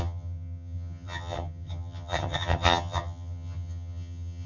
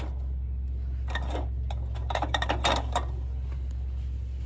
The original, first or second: second